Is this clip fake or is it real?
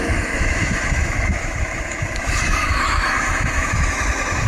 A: fake